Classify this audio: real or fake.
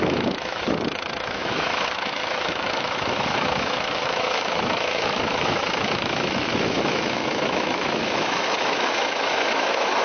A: fake